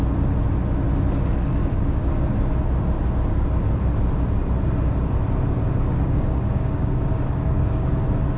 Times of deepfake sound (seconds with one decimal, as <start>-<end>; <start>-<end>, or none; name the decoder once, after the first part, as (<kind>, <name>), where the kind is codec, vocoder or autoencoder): 1.6-2.1 (codec, DAC); 5.9-7.9

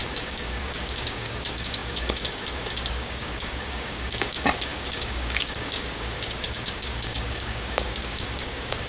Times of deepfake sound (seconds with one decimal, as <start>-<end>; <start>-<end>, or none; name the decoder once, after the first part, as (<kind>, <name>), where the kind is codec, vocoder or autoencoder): 0.0-8.9 (codec, DAC)

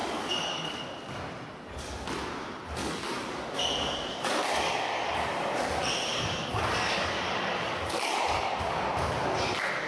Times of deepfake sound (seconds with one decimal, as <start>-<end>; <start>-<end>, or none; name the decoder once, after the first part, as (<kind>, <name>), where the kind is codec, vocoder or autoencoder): 0.0-0.8 (codec, DAC); 2.8-5.3; 6.1-8.9

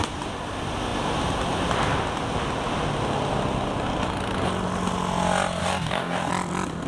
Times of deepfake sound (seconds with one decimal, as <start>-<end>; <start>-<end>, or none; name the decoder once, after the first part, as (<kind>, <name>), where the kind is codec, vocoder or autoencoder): 5.6-6.3 (codec, DAC)

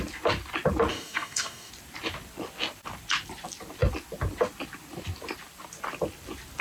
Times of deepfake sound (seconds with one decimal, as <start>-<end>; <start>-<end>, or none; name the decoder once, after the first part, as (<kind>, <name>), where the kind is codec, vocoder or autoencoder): 0.9-1.7 (codec, DAC)